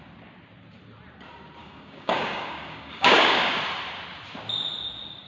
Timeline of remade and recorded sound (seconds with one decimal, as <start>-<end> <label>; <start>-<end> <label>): 0.0-1.6 recorded; 1.6-3.6 remade; 3.6-5.3 recorded